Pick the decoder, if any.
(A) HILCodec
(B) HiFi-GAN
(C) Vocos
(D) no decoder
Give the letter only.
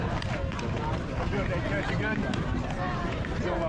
D